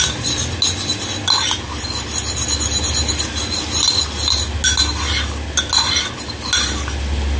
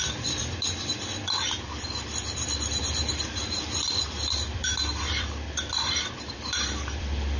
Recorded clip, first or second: first